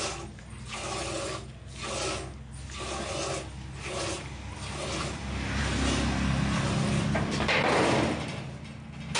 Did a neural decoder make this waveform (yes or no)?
no